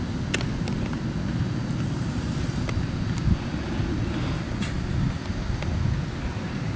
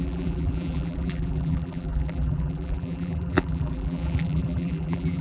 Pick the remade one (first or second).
second